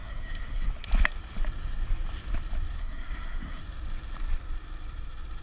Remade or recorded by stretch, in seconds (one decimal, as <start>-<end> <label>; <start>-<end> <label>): 0.0-0.7 remade; 0.7-2.8 recorded; 2.8-3.6 remade; 3.6-5.4 recorded